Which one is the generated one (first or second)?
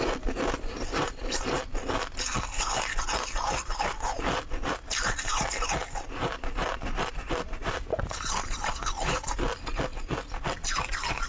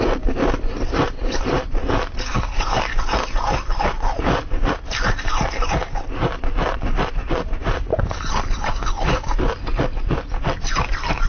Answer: second